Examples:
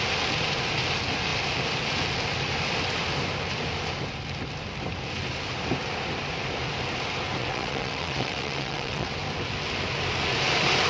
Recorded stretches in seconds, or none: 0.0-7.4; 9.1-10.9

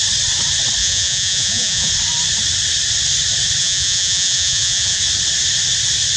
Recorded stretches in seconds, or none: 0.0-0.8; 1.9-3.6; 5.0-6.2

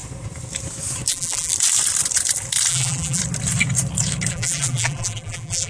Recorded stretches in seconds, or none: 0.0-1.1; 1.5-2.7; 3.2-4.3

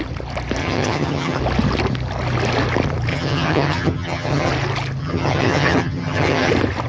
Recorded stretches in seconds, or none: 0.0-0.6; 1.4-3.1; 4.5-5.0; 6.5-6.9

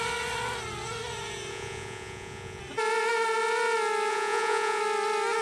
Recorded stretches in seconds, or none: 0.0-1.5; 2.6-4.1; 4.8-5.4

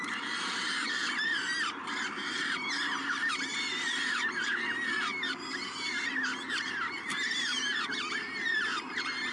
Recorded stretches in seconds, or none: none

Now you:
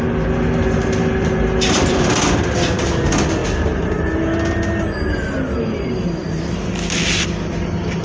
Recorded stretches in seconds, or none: 0.0-1.0; 2.6-8.0